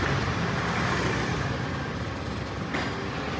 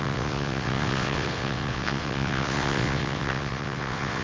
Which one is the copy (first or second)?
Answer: second